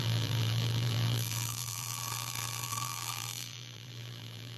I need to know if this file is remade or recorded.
remade